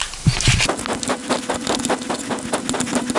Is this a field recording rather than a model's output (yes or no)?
yes